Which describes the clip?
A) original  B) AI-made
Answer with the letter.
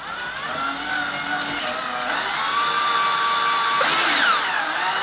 A